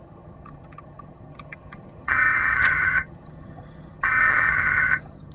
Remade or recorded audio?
remade